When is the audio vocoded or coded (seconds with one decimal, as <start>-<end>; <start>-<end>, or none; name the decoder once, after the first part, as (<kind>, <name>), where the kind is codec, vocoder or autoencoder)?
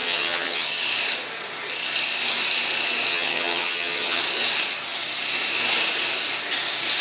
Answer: 0.0-0.8 (vocoder, HiFi-GAN); 3.1-4.2